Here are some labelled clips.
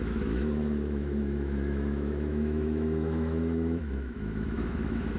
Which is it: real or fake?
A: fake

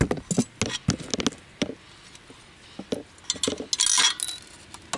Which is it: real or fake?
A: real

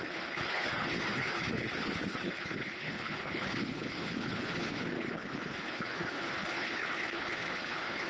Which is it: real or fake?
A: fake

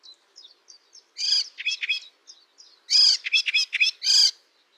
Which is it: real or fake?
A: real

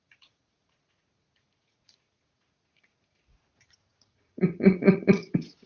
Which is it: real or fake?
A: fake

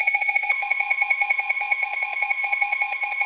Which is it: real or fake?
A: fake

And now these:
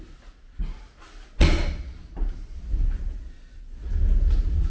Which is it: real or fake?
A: real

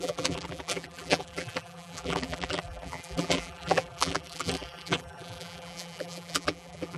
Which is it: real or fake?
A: fake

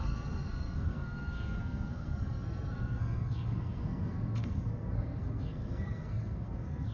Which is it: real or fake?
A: fake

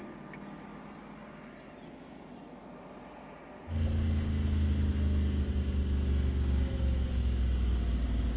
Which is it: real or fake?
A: real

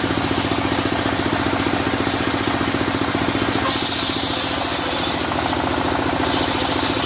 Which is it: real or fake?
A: real